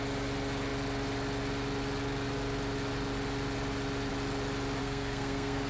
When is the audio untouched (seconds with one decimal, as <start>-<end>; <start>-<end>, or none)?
0.0-4.8